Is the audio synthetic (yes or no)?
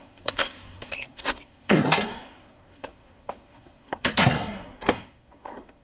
yes